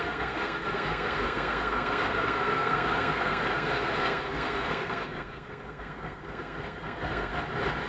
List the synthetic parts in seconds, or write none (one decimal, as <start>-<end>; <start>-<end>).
0.0-7.3